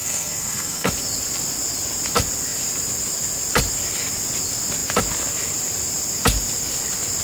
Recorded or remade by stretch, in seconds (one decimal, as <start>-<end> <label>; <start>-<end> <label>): 0.0-0.9 remade; 0.9-7.2 recorded